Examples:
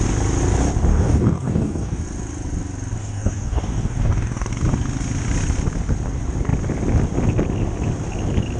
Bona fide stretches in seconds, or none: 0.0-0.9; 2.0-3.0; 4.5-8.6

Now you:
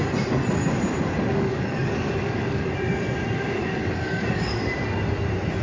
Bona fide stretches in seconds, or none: 0.0-1.3; 2.7-3.6; 4.6-5.6